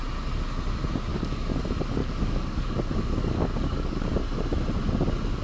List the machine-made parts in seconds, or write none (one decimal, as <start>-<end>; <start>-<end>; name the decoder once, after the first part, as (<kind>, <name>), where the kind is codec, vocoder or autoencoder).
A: 1.1-1.6 (codec, DAC); 2.0-4.1